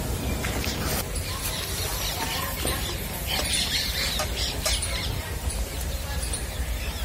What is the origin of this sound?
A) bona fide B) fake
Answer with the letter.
B